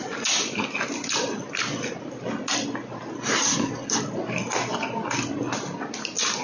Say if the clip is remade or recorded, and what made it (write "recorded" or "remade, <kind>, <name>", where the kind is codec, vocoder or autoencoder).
recorded